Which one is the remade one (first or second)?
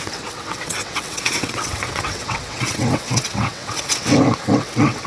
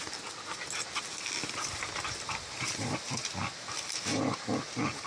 first